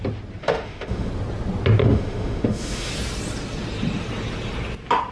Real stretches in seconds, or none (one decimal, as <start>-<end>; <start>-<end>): 0.0-0.4; 1.1-1.8; 2.9-5.1